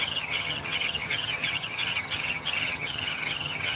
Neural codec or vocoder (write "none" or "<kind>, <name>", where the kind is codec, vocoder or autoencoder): vocoder, HiFi-GAN